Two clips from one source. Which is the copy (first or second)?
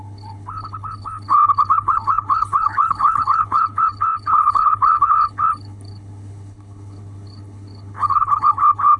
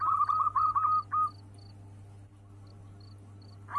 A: first